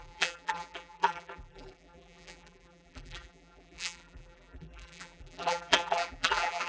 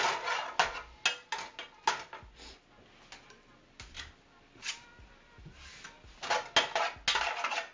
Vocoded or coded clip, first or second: first